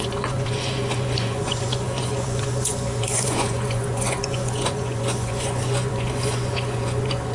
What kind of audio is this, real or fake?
fake